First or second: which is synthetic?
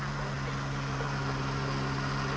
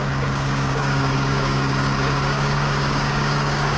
second